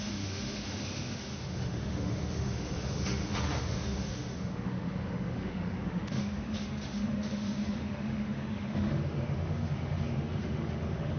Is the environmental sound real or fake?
fake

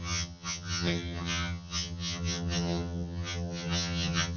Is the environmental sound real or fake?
fake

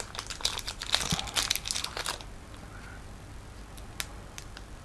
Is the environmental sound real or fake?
real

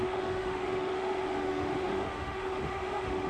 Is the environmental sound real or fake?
fake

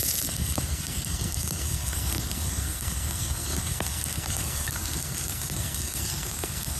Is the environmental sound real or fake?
fake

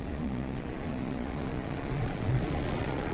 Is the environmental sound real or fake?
fake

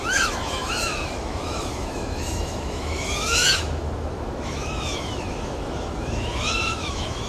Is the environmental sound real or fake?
fake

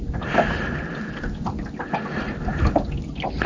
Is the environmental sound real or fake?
real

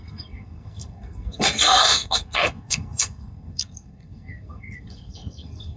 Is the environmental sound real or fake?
fake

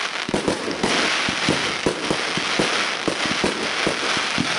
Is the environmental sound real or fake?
real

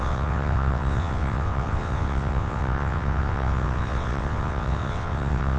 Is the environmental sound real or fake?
fake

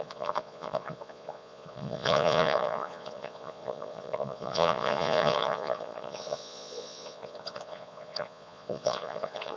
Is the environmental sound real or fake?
fake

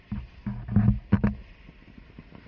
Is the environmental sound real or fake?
real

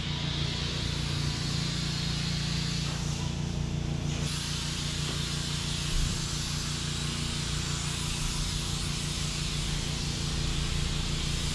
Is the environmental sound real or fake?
real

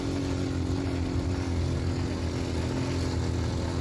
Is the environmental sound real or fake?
real